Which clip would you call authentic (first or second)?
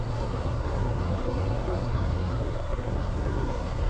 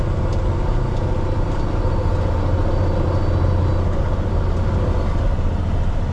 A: second